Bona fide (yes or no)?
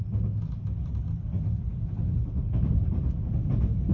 yes